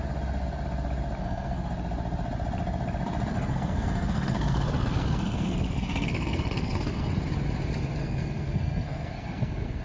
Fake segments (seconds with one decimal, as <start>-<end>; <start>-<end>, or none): 1.2-1.7; 3.3-7.1; 8.0-9.8